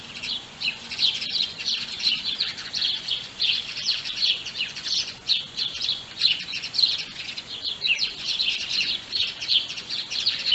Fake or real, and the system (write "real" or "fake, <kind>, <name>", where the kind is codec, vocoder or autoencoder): fake, vocoder, Vocos